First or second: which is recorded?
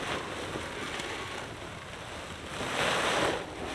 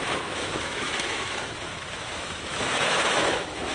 first